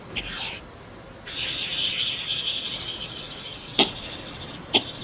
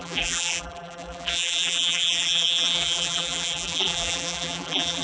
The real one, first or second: first